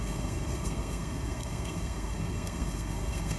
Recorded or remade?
remade